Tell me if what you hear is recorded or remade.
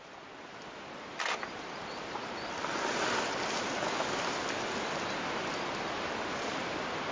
recorded